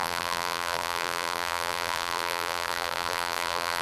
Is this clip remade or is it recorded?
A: remade